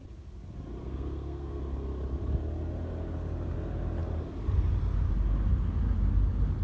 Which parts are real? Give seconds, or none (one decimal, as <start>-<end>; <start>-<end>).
0.0-0.8; 1.6-6.6